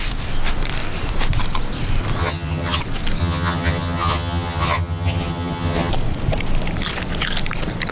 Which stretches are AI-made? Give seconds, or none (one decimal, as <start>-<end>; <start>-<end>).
2.2-2.8; 3.2-5.9